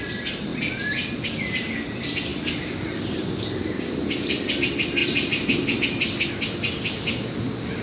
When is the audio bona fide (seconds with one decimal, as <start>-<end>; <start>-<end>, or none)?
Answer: 0.0-2.3; 4.4-5.0; 6.3-7.8